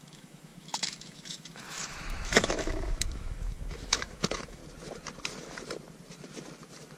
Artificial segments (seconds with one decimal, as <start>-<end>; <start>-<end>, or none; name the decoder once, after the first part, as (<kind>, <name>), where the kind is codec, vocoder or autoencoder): 0.0-4.6 (autoencoder, DAC-VAE)